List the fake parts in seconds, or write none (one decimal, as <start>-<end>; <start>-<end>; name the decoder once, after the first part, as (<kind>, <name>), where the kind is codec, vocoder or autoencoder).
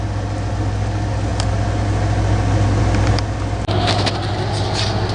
none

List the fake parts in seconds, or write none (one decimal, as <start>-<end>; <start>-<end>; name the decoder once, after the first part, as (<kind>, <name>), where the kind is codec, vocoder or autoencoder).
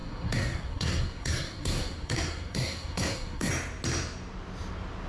0.0-3.5 (codec, SNAC)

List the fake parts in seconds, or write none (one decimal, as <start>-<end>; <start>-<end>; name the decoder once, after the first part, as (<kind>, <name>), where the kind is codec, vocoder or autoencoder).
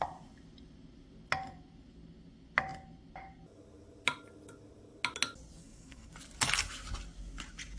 5.6-6.1 (codec, SNAC)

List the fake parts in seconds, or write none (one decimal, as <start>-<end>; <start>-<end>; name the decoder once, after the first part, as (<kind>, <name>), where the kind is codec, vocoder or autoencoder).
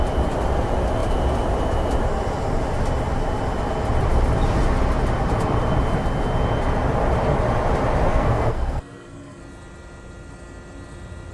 8.1-9.4 (codec, SNAC)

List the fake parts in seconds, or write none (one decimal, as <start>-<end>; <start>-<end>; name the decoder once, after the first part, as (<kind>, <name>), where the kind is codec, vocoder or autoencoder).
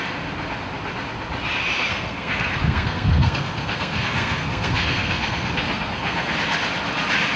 1.9-6.3 (codec, SNAC)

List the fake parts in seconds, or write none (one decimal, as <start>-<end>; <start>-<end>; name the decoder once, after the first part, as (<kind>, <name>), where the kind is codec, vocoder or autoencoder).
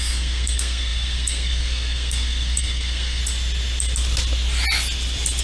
0.0-3.2 (codec, SNAC)